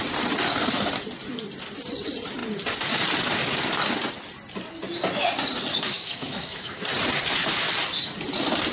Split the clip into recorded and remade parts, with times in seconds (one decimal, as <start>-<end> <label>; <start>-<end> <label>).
0.0-5.7 recorded; 5.7-6.8 remade; 6.8-8.7 recorded